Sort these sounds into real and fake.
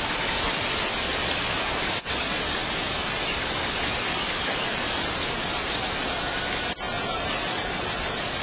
real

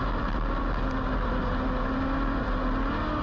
real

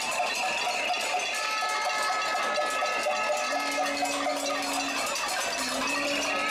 real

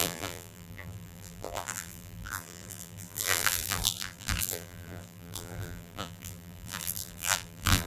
fake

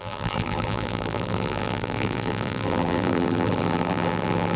fake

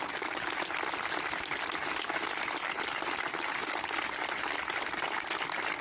fake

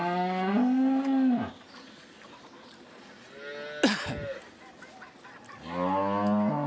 real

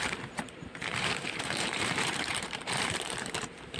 fake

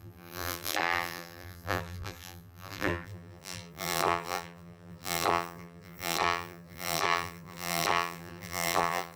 fake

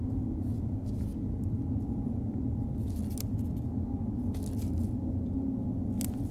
real